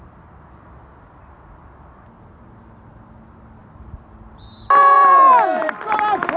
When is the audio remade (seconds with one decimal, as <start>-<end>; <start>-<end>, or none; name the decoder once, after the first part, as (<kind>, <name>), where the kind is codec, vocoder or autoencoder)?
3.6-6.4 (vocoder, BigVGAN v2)